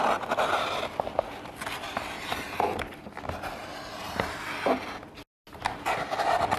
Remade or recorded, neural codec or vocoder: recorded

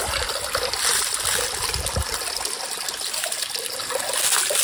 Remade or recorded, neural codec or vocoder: recorded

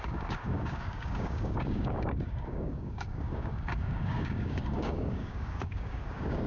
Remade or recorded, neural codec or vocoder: remade, codec, DAC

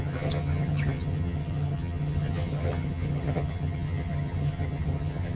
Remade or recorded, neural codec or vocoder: remade, vocoder, HiFi-GAN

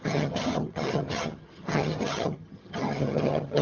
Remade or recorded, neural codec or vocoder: remade, vocoder, HiFi-GAN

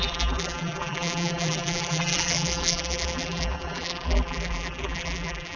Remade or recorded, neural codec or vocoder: remade, vocoder, BigVGAN v2